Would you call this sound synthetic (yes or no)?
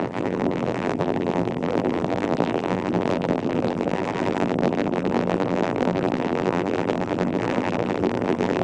yes